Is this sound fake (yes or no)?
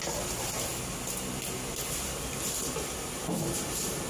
no